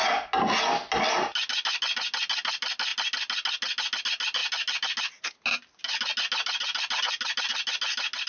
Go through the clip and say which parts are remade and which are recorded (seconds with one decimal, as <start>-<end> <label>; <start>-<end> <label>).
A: 0.0-8.3 recorded

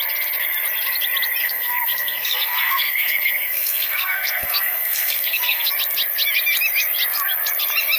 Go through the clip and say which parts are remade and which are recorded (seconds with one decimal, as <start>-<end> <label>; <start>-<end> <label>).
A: 0.0-1.4 recorded; 1.4-5.7 remade; 5.7-8.0 recorded

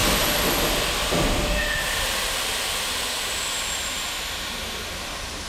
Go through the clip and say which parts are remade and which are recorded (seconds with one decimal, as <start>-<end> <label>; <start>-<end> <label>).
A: 0.0-5.5 recorded

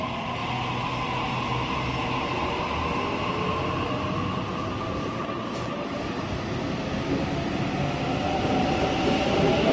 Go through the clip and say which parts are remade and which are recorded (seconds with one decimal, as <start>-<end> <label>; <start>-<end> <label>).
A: 0.0-9.7 recorded